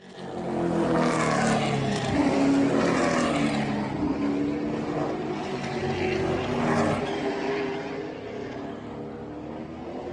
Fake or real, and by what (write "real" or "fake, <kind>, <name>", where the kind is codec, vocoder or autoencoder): real